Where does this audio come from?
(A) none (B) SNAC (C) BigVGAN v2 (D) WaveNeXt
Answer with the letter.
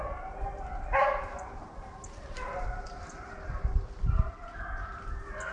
A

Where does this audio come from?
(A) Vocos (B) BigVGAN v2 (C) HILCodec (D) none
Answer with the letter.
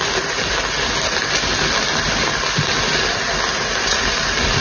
D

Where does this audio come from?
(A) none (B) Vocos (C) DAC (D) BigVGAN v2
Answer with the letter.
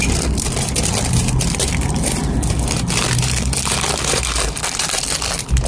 D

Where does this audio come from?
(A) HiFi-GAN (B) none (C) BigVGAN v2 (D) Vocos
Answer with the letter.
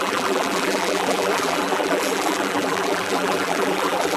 C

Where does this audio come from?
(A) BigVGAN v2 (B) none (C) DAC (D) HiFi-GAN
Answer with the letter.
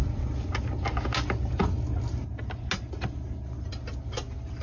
B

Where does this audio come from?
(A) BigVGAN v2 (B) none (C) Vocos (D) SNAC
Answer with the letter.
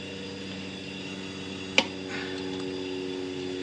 B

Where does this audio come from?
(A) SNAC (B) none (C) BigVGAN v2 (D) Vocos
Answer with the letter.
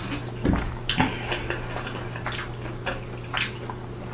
B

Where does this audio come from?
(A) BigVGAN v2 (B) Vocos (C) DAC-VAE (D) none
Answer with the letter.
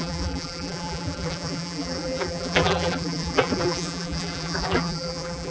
A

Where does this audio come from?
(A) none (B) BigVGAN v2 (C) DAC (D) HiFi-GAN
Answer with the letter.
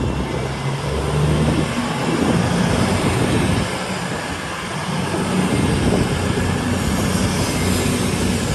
A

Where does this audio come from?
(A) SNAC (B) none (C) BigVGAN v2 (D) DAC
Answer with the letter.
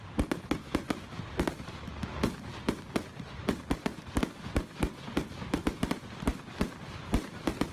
B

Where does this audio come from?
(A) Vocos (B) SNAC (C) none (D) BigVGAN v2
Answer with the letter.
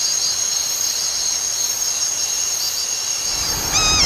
C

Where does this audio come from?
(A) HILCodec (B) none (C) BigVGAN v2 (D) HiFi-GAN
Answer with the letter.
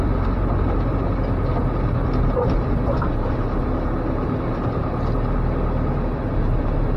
B